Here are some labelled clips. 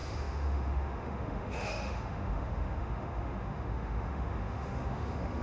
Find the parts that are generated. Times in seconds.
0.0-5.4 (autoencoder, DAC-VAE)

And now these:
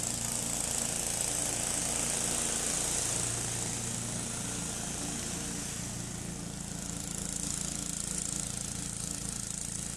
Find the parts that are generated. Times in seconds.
none

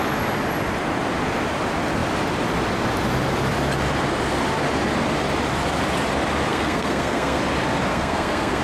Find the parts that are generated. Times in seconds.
6.5-7.4 (codec, SNAC); 7.9-8.6

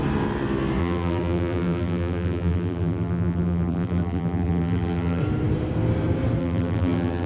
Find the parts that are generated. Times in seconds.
0.8-5.2 (vocoder, BigVGAN v2); 6.4-7.3

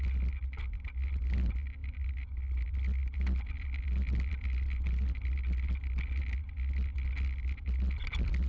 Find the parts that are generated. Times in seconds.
none